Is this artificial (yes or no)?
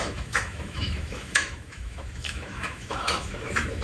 yes